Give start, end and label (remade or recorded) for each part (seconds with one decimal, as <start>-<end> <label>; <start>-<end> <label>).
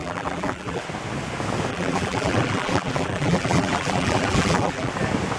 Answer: 0.0-0.8 remade; 0.8-1.7 recorded; 1.7-4.9 remade; 4.9-5.4 recorded